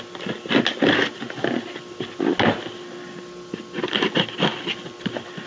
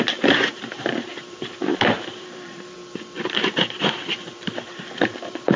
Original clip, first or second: first